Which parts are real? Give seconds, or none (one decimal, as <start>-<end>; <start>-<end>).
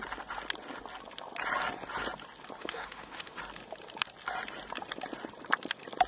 0.0-2.6; 3.4-6.1